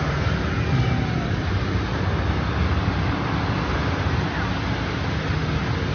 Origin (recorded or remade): recorded